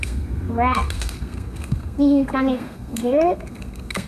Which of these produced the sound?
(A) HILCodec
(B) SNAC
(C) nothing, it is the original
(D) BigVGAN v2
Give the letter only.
B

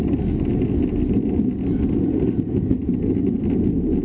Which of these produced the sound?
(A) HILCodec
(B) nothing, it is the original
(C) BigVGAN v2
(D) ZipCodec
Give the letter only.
B